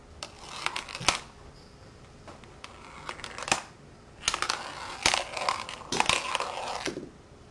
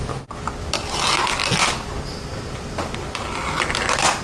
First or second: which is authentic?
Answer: first